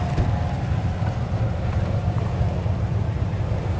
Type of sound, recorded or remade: remade